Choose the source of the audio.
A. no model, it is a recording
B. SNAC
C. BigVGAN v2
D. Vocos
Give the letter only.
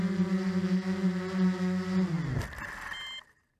A